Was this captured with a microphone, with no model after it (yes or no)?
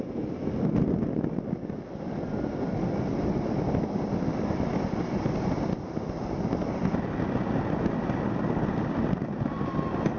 yes